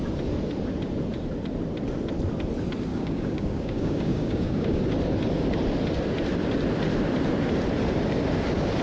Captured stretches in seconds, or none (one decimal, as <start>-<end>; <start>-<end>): 0.0-2.9; 4.8-8.8